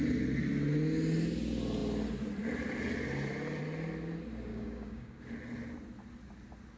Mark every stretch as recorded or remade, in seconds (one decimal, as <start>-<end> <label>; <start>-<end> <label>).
0.0-4.5 recorded; 4.5-5.2 remade; 5.2-6.8 recorded